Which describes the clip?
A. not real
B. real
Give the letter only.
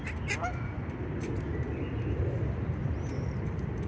B